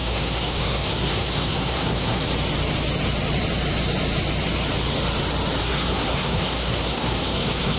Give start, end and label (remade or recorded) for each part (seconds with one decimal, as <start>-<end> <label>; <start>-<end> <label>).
0.0-2.2 remade; 2.2-5.6 recorded; 5.6-7.8 remade

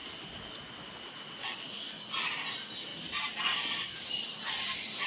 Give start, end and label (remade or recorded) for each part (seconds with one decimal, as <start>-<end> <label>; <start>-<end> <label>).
0.0-1.4 recorded; 1.4-2.1 remade; 2.1-5.1 recorded

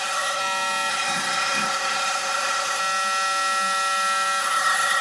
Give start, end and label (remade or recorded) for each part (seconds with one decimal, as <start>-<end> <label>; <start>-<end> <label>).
0.0-0.4 remade; 0.4-0.9 recorded; 0.9-2.8 remade; 2.8-4.4 recorded; 4.4-5.0 remade